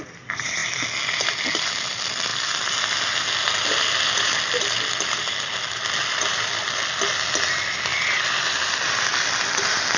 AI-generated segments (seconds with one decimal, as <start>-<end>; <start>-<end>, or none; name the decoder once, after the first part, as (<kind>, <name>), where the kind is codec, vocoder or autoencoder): none